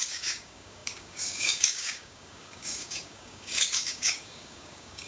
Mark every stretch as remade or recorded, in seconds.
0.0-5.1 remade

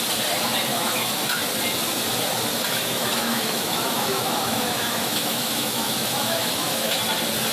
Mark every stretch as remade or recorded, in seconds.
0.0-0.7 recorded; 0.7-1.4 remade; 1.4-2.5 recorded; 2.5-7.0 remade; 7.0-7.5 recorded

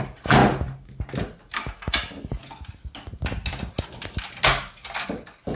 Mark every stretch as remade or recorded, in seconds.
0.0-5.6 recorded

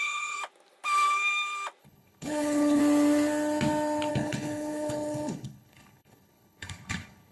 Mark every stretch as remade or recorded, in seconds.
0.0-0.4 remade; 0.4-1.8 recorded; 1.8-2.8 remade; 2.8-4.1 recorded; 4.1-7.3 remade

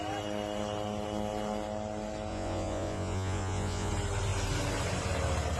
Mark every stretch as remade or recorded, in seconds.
0.0-2.3 recorded; 2.3-3.9 remade; 3.9-5.6 recorded